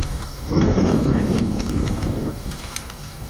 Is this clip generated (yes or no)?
yes